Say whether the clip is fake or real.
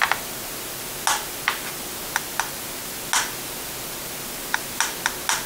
real